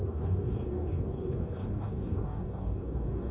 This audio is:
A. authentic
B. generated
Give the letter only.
B